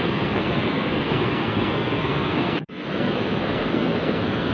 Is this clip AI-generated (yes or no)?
yes